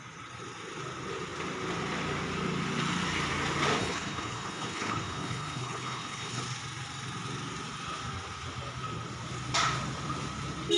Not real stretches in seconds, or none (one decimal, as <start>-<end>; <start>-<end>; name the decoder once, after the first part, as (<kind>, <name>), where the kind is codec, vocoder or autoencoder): 3.8-6.4 (codec, HILCodec)